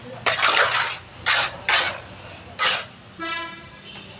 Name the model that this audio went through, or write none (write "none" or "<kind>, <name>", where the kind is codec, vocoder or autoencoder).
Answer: none